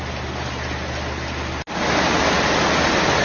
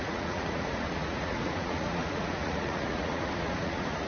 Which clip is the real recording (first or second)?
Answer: first